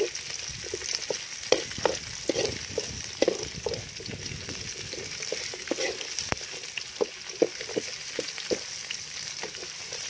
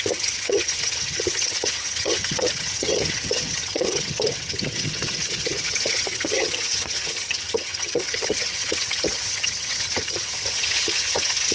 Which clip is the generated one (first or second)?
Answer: second